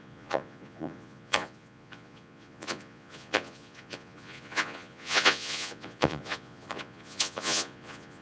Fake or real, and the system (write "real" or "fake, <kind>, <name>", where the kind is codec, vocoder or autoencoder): fake, vocoder, Vocos